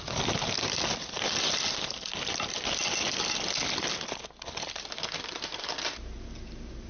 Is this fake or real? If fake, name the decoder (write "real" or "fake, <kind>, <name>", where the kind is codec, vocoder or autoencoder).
real